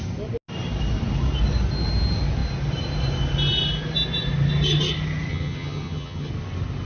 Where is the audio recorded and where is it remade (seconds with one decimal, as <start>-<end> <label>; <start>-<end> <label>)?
0.0-5.3 recorded; 5.3-6.3 remade; 6.3-6.8 recorded